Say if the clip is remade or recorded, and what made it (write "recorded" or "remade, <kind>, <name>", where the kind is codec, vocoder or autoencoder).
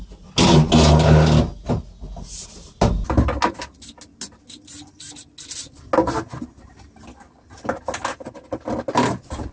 recorded